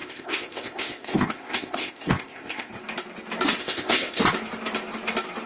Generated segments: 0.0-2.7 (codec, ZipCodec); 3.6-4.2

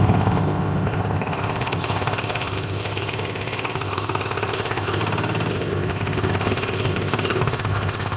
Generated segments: 0.0-5.0 (codec, ZipCodec); 5.5-8.2

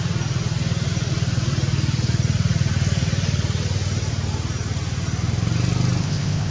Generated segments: 6.0-6.5 (codec, ZipCodec)

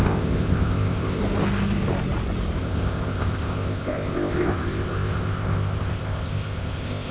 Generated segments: 0.0-1.2 (codec, ZipCodec); 2.6-7.1

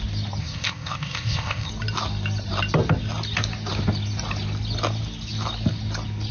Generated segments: 0.4-1.7 (codec, ZipCodec)

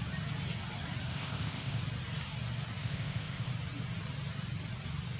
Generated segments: 1.1-1.8 (codec, ZipCodec); 2.8-3.5

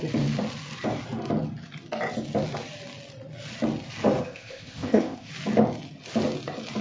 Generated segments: 4.2-5.3 (codec, ZipCodec)